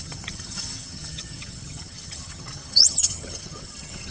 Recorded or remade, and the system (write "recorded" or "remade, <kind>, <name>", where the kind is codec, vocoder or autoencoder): remade, vocoder, HiFi-GAN